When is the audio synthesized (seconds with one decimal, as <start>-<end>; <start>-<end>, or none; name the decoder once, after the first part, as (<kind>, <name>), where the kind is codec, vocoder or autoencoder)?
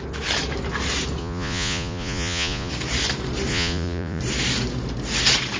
1.2-2.7 (vocoder, Vocos); 3.5-4.2